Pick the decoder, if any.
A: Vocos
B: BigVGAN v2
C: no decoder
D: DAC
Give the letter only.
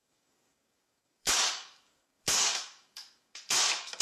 D